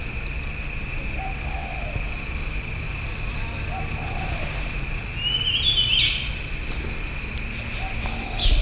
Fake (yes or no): no